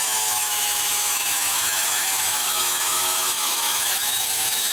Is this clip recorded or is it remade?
remade